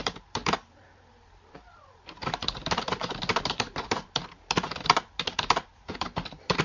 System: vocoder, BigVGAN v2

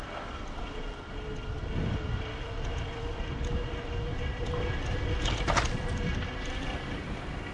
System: none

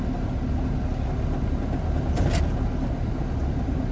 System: none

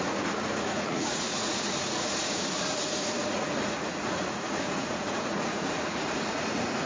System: vocoder, Vocos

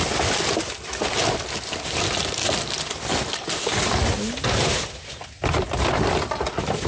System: none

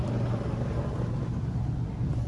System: none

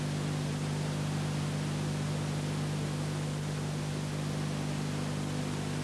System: none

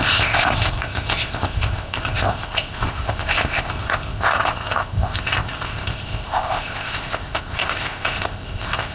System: codec, ZipCodec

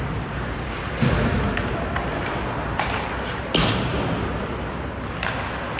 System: none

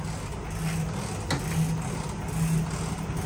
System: none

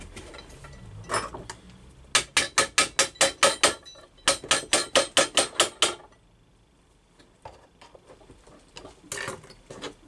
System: none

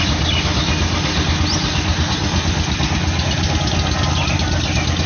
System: none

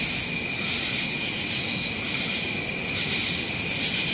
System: none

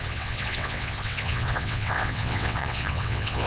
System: vocoder, WaveNeXt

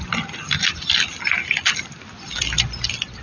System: none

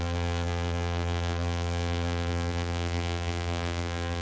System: vocoder, BigVGAN v2